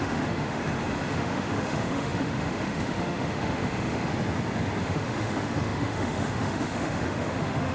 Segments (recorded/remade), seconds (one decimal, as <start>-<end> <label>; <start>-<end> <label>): 0.0-0.6 remade; 0.6-1.1 recorded; 1.1-4.1 remade; 4.1-4.8 recorded; 4.8-7.7 remade